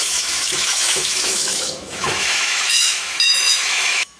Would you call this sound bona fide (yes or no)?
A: no